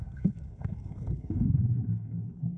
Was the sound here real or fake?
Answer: fake